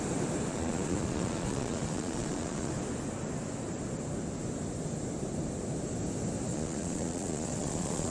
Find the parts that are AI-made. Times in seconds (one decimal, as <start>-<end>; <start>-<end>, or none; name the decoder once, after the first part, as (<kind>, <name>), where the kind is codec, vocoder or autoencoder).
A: 0.5-2.7 (vocoder, Vocos); 6.5-8.1

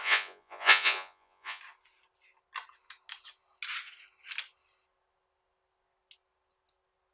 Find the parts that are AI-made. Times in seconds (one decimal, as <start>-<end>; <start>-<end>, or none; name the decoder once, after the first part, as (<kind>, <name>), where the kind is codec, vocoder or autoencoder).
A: 0.0-1.6 (vocoder, Vocos)

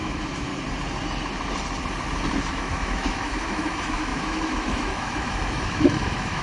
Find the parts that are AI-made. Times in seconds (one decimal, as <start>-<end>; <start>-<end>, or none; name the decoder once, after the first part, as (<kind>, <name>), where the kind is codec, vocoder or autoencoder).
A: 0.0-0.5 (autoencoder, DAC-VAE); 2.5-6.4